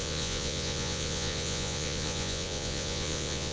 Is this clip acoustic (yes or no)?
no